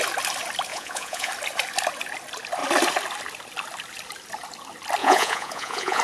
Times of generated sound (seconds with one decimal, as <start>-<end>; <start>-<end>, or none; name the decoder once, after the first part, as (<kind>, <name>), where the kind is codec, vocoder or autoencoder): 0.7-1.3 (vocoder, Vocos); 5.0-6.0